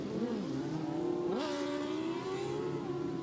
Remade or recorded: remade